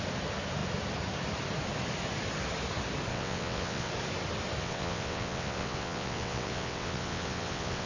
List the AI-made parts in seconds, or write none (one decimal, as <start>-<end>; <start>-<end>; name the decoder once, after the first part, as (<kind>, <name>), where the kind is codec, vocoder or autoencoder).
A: 3.1-3.9 (vocoder, WaveNeXt); 4.6-7.9